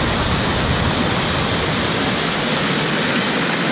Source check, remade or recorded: recorded